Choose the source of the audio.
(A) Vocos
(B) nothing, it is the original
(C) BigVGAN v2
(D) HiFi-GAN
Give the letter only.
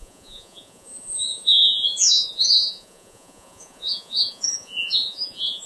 A